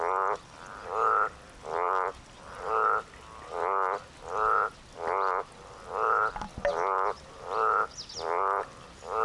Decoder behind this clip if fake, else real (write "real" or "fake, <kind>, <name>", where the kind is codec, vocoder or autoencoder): real